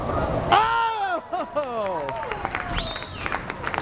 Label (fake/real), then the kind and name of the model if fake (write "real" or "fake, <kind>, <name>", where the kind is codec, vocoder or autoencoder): real